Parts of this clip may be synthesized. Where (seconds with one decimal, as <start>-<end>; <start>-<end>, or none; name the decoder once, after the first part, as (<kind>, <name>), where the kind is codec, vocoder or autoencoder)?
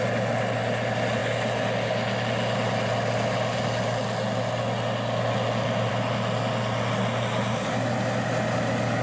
none